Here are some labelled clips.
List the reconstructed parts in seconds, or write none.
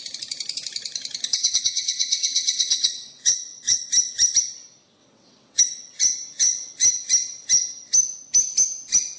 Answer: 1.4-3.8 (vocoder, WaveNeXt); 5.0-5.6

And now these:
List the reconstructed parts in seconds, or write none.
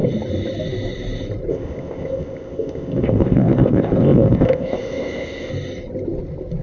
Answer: 1.5-5.5 (codec, ZipCodec)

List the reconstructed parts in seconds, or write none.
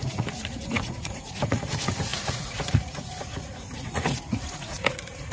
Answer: 0.0-5.3 (vocoder, Vocos)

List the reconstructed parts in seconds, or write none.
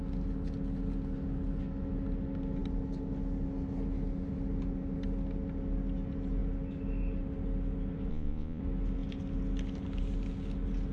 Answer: 8.1-8.6 (vocoder, Vocos)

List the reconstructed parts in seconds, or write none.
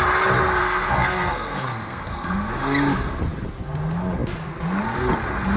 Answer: 0.6-2.5 (codec, SNAC)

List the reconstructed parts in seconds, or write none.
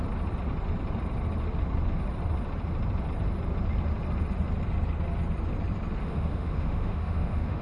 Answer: 6.0-7.6 (autoencoder, DAC-VAE)